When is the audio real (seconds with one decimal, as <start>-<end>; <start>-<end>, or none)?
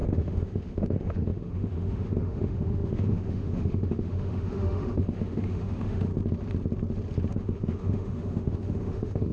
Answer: 6.1-7.3